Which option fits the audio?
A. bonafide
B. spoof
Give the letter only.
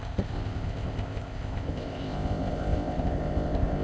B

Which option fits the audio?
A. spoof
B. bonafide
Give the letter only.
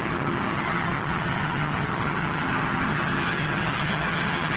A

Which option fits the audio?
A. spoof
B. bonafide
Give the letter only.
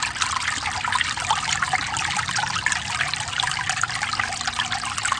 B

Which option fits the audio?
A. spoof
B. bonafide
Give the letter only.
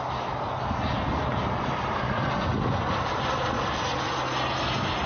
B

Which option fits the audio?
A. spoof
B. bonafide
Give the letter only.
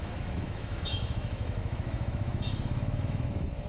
A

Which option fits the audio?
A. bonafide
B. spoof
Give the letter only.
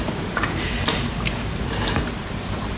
B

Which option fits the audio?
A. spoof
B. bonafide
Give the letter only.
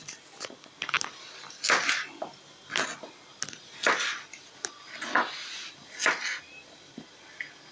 B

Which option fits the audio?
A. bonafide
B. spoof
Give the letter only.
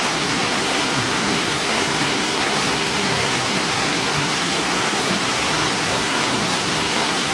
B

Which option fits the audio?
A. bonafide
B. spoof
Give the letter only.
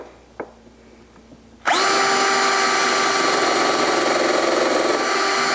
A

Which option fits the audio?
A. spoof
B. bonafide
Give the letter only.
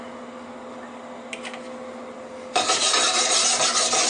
B